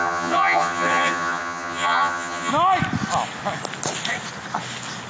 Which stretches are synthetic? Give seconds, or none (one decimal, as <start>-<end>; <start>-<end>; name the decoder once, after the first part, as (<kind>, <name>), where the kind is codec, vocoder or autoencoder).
0.0-2.5 (vocoder, HiFi-GAN)